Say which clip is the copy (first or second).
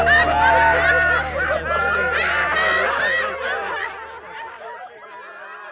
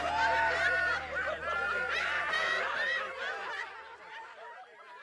second